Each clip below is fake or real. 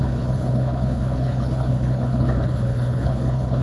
fake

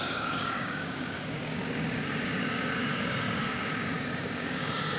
fake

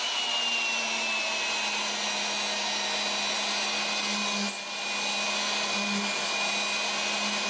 real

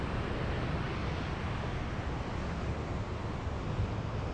real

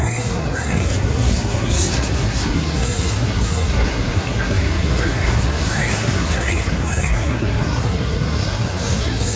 fake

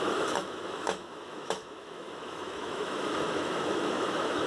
fake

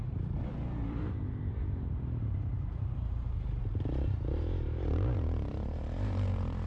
fake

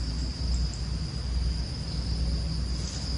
real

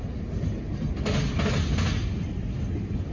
real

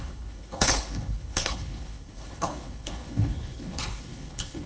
fake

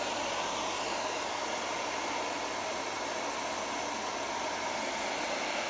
real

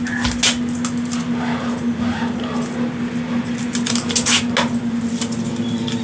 real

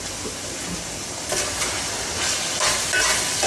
real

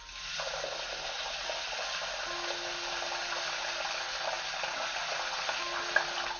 real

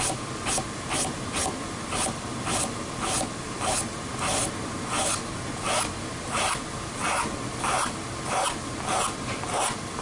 real